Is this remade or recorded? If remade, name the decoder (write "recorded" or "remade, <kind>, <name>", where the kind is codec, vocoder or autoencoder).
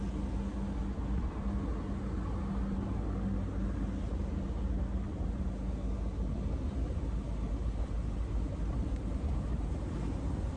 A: recorded